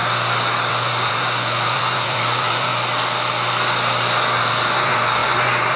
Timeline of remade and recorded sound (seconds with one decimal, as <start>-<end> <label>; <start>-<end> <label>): 0.0-0.7 recorded; 0.7-2.7 remade; 2.7-4.4 recorded; 4.4-5.8 remade